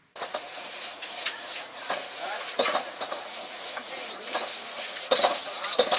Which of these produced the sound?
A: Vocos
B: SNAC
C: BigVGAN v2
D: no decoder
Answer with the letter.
A